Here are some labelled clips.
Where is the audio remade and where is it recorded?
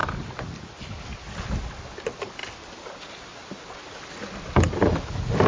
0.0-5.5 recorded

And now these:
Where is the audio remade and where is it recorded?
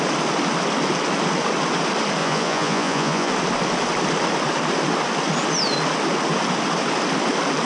0.0-2.2 recorded; 2.2-3.3 remade; 3.3-7.7 recorded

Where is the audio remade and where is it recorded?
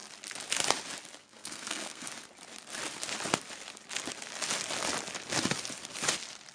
0.0-1.2 recorded; 1.2-2.1 remade; 2.1-6.5 recorded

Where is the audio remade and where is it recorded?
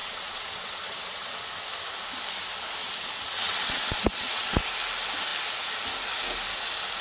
0.0-1.6 remade; 1.6-2.8 recorded; 2.8-4.6 remade; 4.6-7.0 recorded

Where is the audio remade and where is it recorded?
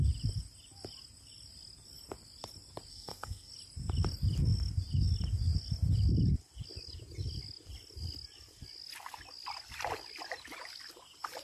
0.0-2.9 recorded; 2.9-3.5 remade; 3.5-11.4 recorded